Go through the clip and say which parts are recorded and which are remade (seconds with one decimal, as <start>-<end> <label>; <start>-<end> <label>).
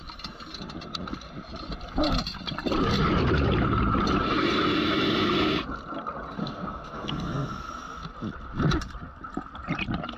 0.0-6.4 recorded; 6.4-7.7 remade; 7.7-10.2 recorded